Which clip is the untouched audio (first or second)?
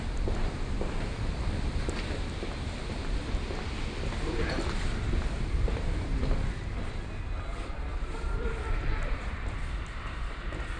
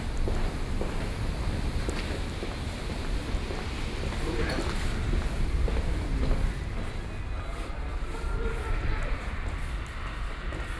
second